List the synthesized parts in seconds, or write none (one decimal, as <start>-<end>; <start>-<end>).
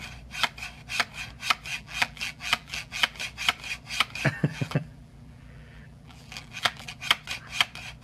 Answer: 1.7-3.2; 4.5-7.0